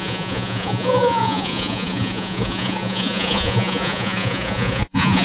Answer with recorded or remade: remade